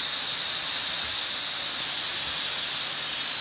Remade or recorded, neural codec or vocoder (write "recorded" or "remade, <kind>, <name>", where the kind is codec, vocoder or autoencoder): recorded